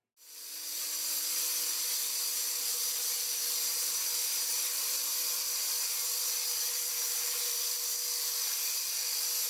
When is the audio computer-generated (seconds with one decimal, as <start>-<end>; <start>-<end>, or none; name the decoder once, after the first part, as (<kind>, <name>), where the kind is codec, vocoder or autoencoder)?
4.5-5.1 (vocoder, BigVGAN v2)